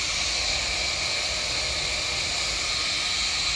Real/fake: real